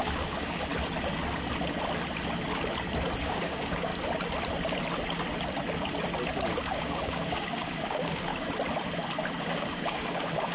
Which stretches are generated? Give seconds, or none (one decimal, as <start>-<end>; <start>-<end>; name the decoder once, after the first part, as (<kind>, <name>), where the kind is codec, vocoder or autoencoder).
0.0-0.7 (codec, DAC); 3.2-3.9; 6.6-8.3; 9.4-10.5